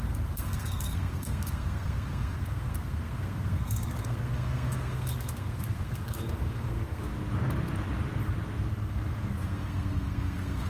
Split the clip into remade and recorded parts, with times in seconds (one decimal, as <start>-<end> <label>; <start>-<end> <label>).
0.0-7.1 remade; 7.1-8.7 recorded; 8.7-10.7 remade